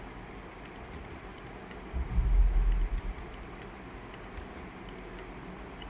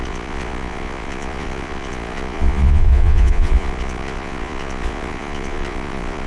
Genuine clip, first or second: first